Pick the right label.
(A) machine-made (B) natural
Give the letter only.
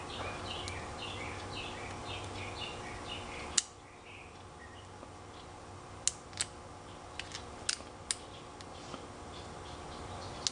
B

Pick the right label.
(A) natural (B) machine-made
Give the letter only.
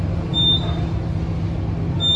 A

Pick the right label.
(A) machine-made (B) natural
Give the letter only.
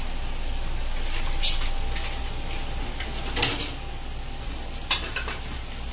B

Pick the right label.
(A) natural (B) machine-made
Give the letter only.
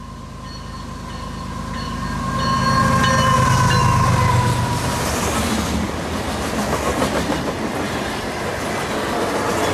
A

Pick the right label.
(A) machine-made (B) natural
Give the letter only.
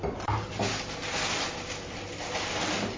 B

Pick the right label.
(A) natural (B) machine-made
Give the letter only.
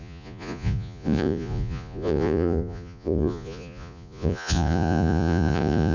B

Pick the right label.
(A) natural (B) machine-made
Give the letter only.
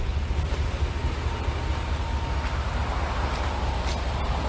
A